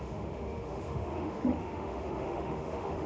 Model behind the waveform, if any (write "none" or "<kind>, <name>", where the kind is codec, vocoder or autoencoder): autoencoder, DAC-VAE